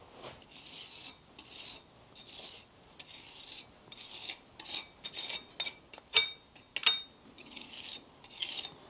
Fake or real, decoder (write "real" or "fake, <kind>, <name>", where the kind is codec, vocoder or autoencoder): real